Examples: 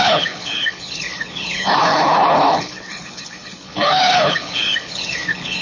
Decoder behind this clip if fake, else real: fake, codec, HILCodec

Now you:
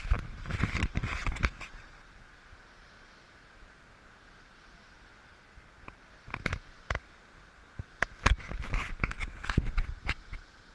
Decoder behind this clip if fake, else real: real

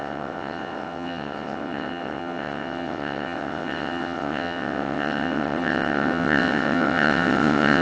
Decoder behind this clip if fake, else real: fake, vocoder, WaveNeXt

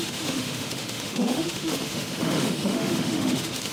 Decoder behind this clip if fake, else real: fake, autoencoder, DAC-VAE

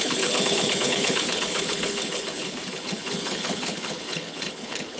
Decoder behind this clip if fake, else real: fake, codec, HILCodec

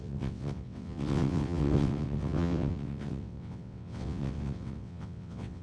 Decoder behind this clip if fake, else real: fake, vocoder, WaveNeXt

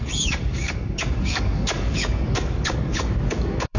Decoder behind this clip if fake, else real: fake, codec, DAC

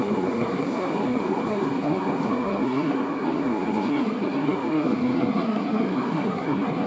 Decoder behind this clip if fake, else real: fake, codec, SNAC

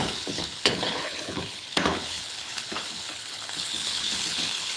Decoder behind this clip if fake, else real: fake, codec, HILCodec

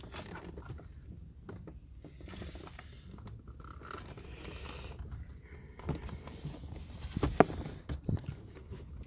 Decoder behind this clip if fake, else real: real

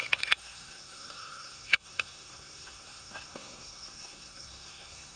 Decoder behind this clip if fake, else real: fake, codec, SNAC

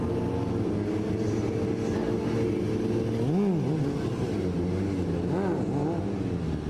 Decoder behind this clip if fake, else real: real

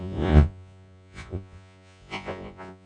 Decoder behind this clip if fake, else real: fake, vocoder, Vocos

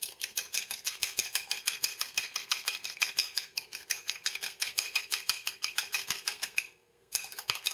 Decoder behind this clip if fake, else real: fake, codec, SNAC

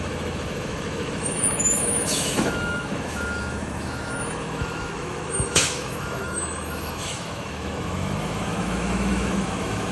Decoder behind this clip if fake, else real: fake, autoencoder, DAC-VAE